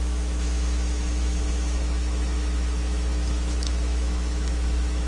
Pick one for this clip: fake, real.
fake